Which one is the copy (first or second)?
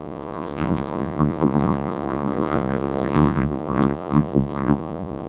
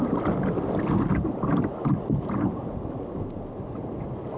first